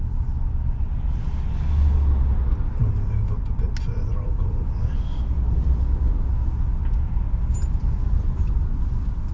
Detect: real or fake real